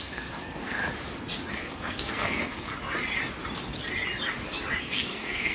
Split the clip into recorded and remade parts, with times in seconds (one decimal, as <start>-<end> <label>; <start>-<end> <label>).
0.0-0.8 remade; 0.8-1.5 recorded; 1.5-2.7 remade; 2.7-4.8 recorded; 4.8-5.5 remade